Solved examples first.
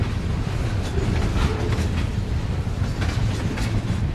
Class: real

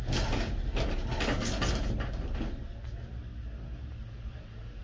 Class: real